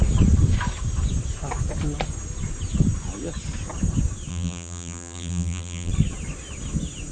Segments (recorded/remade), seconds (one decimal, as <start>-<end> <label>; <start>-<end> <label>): 0.0-4.3 recorded; 4.3-5.9 remade; 5.9-7.1 recorded